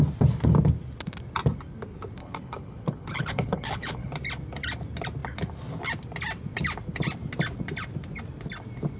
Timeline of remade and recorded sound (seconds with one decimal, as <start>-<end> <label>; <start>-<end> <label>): 0.0-2.2 recorded; 2.2-4.1 remade; 4.1-9.0 recorded